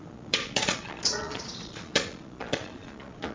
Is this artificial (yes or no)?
yes